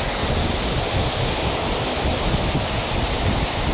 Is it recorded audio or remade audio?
recorded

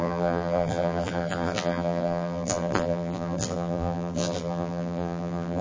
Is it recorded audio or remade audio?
remade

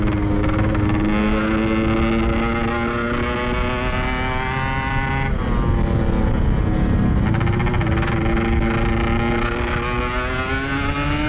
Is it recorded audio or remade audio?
recorded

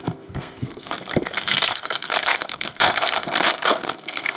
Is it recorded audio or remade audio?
remade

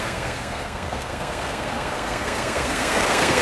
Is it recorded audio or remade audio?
remade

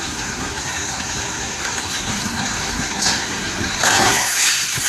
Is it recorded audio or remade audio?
remade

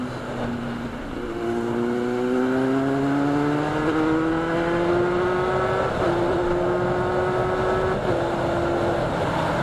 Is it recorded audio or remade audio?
recorded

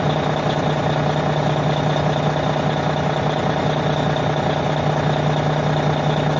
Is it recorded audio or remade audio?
recorded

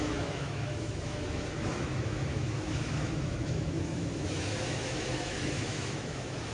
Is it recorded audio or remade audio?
remade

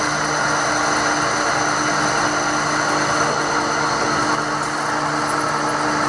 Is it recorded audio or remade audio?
recorded